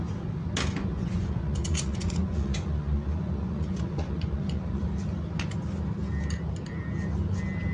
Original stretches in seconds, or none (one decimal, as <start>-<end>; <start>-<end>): 0.0-0.8; 4.9-7.7